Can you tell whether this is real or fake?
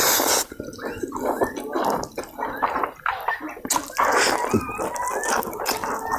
real